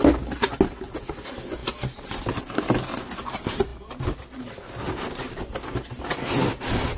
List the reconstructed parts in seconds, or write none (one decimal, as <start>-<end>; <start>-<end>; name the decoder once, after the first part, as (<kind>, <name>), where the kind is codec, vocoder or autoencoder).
none